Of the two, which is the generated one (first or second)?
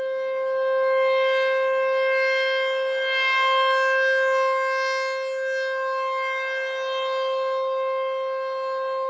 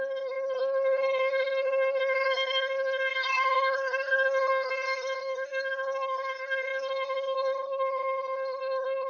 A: second